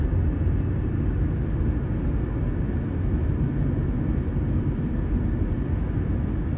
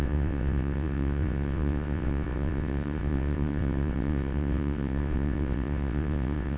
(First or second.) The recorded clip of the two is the first